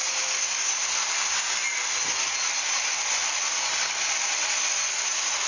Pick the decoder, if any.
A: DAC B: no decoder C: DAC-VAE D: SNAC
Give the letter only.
B